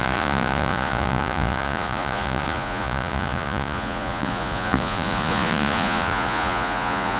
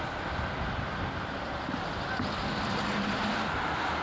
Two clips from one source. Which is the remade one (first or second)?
first